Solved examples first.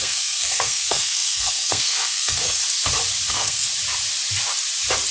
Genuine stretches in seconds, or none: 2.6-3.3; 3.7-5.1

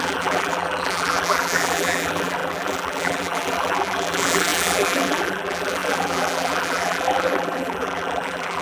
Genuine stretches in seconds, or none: none